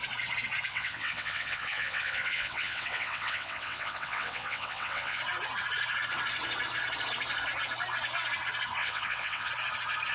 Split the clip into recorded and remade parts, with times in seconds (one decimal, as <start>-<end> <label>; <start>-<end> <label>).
0.0-0.7 recorded; 0.7-5.2 remade; 5.2-8.8 recorded; 8.8-9.5 remade; 9.5-10.1 recorded